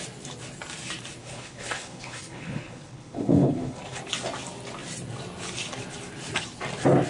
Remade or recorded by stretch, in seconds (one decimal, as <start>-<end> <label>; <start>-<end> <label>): 0.0-1.2 recorded; 1.2-4.0 remade; 4.0-7.1 recorded